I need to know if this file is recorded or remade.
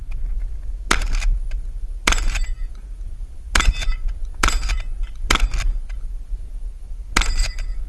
recorded